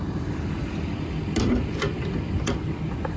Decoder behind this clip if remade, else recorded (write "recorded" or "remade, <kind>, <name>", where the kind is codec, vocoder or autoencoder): recorded